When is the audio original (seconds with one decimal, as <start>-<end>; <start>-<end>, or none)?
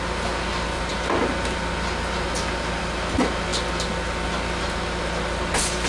0.0-5.9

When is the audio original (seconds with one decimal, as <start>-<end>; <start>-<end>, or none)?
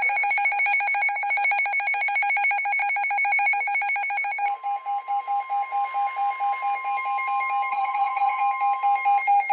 0.0-7.7; 8.4-9.5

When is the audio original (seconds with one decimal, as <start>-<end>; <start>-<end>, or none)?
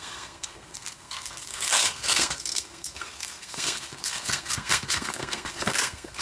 none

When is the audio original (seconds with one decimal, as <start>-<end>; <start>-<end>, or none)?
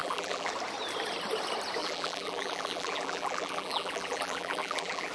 0.5-1.8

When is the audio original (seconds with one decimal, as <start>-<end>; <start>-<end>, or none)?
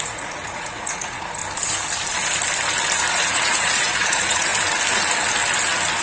1.4-3.1; 4.5-6.0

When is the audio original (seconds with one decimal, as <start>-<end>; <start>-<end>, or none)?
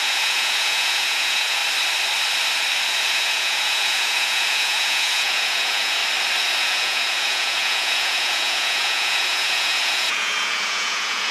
1.6-2.9; 6.0-6.6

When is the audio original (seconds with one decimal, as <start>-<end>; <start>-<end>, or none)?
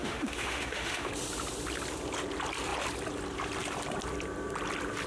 1.1-5.1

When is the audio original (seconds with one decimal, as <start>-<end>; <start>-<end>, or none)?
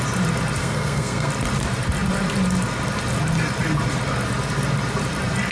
0.0-0.6; 1.3-5.5